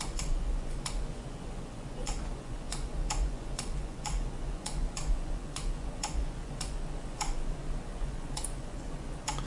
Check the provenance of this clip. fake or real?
fake